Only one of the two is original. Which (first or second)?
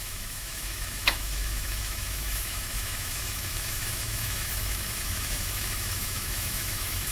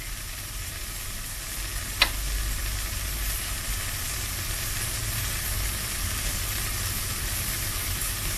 second